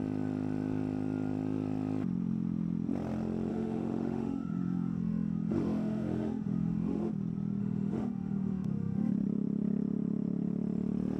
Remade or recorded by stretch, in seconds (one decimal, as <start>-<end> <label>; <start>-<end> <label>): 0.0-3.5 recorded; 3.5-7.1 remade; 7.1-7.6 recorded; 7.6-9.1 remade; 9.1-11.2 recorded